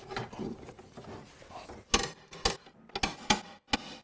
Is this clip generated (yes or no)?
no